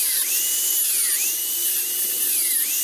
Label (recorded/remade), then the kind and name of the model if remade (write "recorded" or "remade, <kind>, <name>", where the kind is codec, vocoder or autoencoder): recorded